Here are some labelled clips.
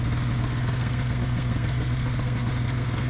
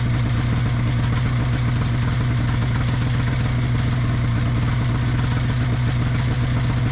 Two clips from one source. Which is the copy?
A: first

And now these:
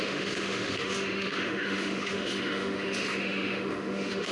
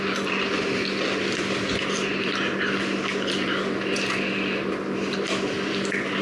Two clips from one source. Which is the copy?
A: first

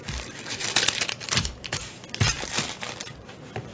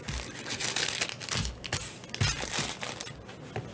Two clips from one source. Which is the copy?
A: first